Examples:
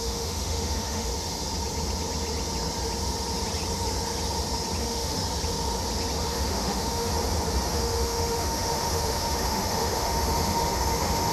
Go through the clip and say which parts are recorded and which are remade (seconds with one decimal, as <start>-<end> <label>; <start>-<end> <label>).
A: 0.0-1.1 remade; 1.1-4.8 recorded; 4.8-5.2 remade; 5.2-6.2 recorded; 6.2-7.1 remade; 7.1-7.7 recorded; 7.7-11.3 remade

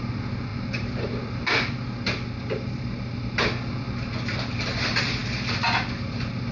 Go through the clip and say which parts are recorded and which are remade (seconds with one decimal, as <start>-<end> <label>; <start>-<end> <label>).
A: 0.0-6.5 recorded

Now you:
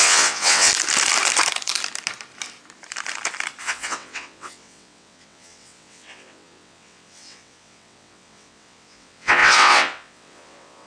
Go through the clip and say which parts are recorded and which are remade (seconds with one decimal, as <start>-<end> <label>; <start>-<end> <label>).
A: 0.0-0.7 remade; 0.7-3.6 recorded; 3.6-10.9 remade

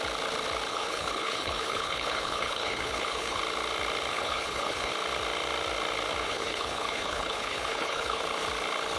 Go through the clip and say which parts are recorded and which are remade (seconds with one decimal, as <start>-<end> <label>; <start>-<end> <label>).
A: 0.0-0.7 recorded; 0.7-3.4 remade; 3.4-4.1 recorded; 4.1-4.9 remade; 4.9-6.2 recorded; 6.2-8.2 remade; 8.2-9.0 recorded

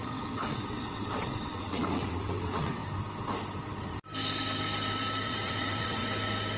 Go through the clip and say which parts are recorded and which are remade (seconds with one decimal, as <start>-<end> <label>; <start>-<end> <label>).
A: 0.0-2.8 remade; 2.8-5.2 recorded; 5.2-6.0 remade; 6.0-6.6 recorded